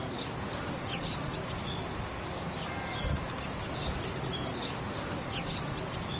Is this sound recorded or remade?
recorded